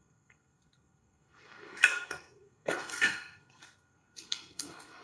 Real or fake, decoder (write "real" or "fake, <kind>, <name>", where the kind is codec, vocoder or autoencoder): fake, codec, SNAC